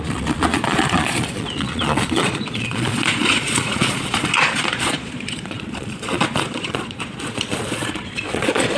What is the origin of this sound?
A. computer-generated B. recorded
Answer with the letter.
A